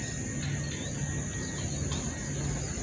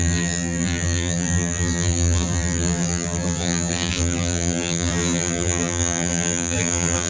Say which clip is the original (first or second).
first